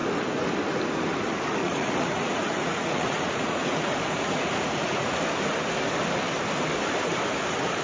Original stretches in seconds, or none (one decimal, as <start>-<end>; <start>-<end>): 0.0-1.6; 5.2-7.8